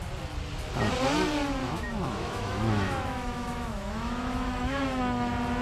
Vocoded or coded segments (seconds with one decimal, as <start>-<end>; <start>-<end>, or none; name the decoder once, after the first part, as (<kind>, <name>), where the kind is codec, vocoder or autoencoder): 1.6-5.0 (autoencoder, DAC-VAE)